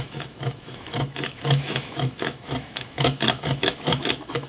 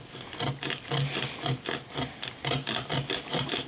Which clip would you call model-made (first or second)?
first